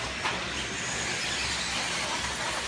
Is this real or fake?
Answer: real